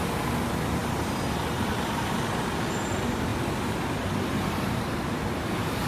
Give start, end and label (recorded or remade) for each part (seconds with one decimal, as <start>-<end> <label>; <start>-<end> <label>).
0.0-0.8 recorded; 0.8-1.6 remade; 1.6-3.3 recorded; 3.3-5.9 remade

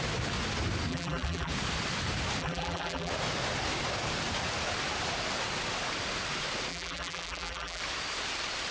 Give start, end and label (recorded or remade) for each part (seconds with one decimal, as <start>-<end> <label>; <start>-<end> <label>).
0.0-0.9 recorded; 0.9-1.5 remade; 1.5-2.4 recorded; 2.4-3.1 remade; 3.1-6.7 recorded; 6.7-7.8 remade; 7.8-8.7 recorded

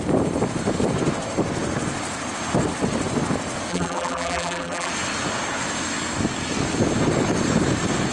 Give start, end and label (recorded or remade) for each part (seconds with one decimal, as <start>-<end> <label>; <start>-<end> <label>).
0.0-3.7 recorded; 3.7-4.9 remade; 4.9-8.1 recorded

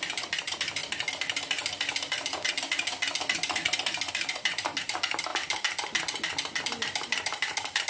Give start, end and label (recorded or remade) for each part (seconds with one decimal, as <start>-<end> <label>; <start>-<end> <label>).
0.0-0.8 remade; 0.8-4.1 recorded; 4.1-5.3 remade; 5.3-6.6 recorded; 6.6-7.9 remade